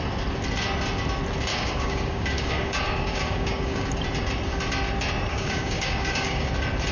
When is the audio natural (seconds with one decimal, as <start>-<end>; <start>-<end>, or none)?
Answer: 0.0-1.5; 3.9-5.3; 6.5-6.9